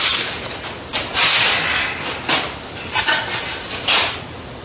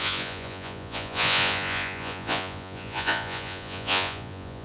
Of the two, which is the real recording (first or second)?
first